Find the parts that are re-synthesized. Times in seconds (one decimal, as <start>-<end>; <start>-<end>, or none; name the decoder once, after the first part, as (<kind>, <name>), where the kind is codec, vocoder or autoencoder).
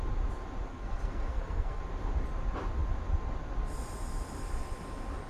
0.7-1.8 (codec, SNAC)